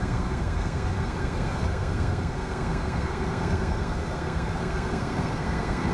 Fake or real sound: fake